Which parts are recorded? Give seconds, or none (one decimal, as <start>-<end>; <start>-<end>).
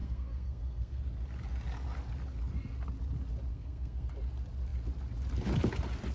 1.0-3.5; 4.1-6.1